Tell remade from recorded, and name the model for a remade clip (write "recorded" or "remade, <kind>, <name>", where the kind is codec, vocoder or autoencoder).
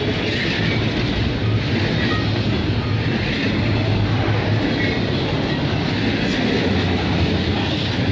recorded